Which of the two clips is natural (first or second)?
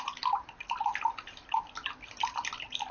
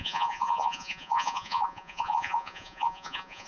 first